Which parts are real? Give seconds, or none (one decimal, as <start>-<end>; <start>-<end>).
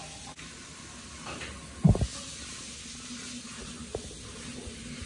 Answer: 0.0-5.1